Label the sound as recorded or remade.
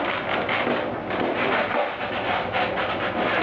recorded